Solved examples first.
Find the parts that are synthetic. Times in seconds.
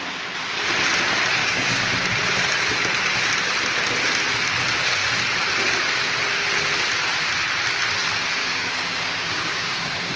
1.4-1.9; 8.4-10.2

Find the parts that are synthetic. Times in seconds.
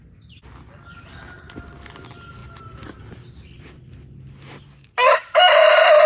none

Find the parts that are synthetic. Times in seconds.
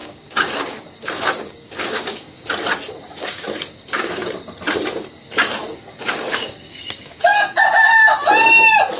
0.0-2.5; 3.2-4.3; 5.7-7.9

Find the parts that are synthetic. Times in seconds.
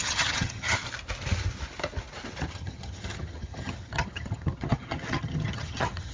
0.0-0.8; 2.5-6.1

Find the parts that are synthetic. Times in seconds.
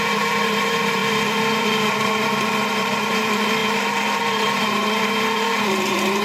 0.0-6.2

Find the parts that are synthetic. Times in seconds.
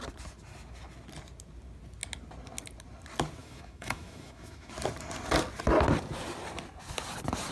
3.4-4.7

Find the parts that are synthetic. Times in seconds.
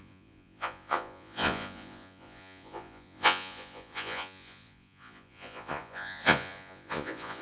0.0-7.4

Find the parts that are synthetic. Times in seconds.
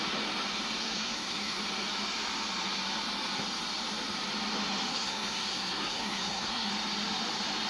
0.8-1.6; 4.9-6.7